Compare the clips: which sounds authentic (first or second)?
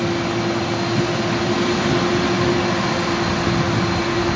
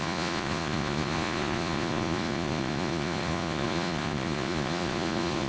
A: first